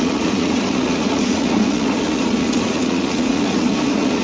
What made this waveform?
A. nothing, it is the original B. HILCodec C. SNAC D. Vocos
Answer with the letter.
D